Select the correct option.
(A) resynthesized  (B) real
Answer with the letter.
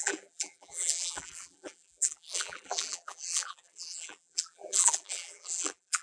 A